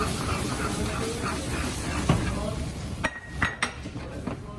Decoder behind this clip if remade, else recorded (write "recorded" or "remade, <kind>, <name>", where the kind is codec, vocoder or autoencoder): recorded